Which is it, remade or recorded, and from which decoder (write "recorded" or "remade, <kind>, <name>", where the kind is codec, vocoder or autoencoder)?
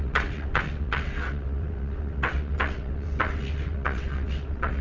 remade, vocoder, WaveNeXt